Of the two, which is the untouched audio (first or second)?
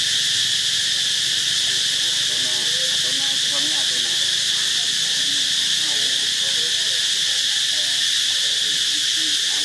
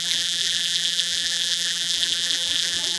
first